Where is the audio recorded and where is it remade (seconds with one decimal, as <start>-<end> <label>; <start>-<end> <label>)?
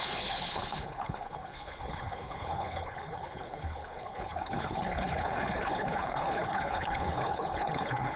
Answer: 0.0-8.2 remade